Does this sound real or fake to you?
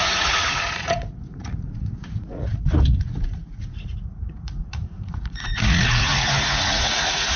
fake